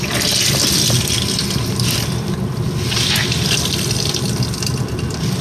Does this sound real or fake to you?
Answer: real